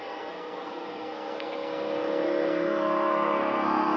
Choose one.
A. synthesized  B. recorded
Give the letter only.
A